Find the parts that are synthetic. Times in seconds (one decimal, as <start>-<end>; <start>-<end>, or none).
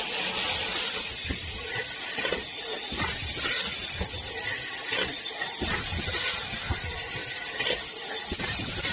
none